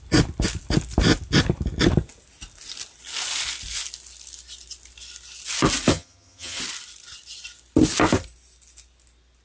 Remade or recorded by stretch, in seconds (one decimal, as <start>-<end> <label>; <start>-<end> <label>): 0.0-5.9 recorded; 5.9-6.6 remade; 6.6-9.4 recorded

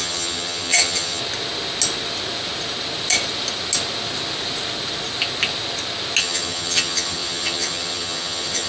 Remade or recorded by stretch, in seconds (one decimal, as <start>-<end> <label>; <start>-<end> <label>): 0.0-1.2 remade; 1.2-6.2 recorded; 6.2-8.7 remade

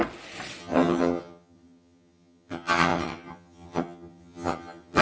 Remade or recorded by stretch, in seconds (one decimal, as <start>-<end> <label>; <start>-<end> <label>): 0.0-0.6 recorded; 0.6-5.0 remade

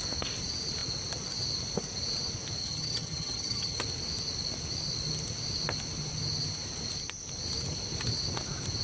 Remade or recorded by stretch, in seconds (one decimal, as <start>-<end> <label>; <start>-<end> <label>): 0.0-2.6 recorded; 2.6-3.8 remade; 3.8-8.8 recorded

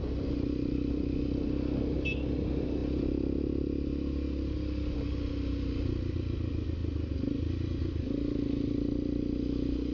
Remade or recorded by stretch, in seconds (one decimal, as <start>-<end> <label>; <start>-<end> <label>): 0.0-9.9 recorded

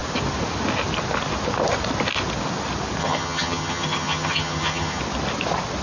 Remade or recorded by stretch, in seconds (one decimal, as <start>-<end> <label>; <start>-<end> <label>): 0.0-3.0 recorded; 3.0-5.0 remade; 5.0-5.8 recorded

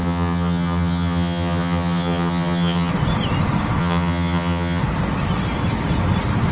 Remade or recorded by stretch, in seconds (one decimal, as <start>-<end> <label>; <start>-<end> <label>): 0.0-2.9 remade; 2.9-3.8 recorded; 3.8-4.8 remade; 4.8-6.5 recorded

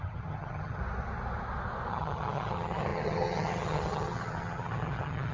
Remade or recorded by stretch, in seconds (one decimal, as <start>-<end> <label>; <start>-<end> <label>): 0.0-0.8 remade; 0.8-1.9 recorded; 1.9-5.3 remade